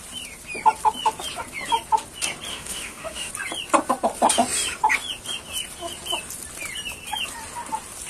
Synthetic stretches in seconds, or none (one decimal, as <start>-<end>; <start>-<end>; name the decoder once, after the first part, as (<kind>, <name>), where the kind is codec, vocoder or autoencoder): 2.5-3.3 (autoencoder, DAC-VAE)

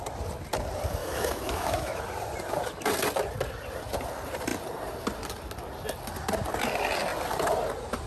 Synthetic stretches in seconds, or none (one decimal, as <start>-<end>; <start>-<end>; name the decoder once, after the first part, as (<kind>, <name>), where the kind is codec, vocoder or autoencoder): 1.0-2.0 (autoencoder, DAC-VAE)

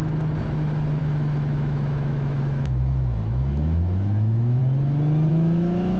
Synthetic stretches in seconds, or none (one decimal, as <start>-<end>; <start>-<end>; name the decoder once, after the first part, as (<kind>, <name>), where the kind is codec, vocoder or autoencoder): 1.0-4.6 (autoencoder, DAC-VAE); 5.3-6.0

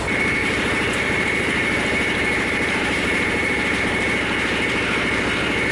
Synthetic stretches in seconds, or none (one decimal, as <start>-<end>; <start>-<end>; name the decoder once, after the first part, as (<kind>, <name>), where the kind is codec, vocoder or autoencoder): 0.4-3.8 (vocoder, BigVGAN v2)

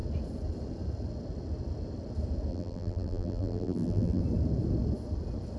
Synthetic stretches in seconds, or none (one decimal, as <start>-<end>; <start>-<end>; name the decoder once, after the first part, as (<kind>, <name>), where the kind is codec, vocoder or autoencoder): 2.5-4.2 (vocoder, BigVGAN v2)

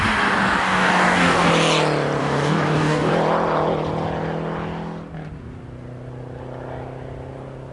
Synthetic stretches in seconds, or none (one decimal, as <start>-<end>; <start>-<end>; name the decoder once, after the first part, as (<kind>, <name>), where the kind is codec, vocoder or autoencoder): 0.6-1.5 (codec, DAC); 2.2-3.1